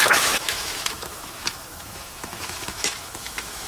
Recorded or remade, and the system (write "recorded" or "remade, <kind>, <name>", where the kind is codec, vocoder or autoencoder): remade, autoencoder, DAC-VAE